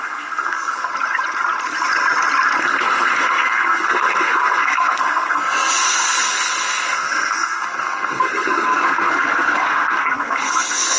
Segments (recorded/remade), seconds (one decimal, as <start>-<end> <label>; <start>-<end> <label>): 0.0-0.9 remade; 0.9-2.6 recorded; 2.6-11.0 remade